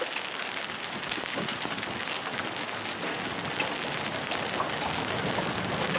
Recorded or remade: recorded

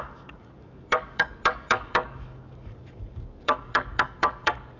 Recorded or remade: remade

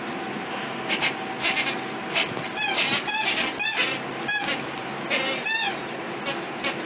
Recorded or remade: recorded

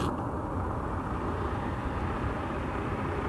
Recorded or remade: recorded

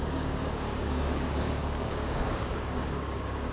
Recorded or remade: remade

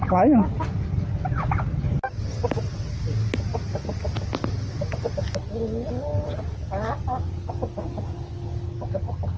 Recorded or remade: recorded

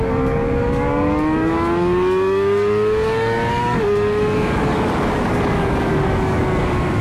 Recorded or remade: remade